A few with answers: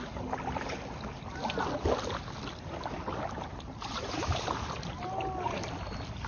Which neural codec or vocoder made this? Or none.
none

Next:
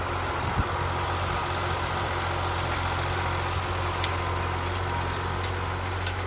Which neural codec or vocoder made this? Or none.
none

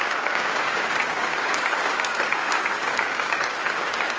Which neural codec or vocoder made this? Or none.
codec, DAC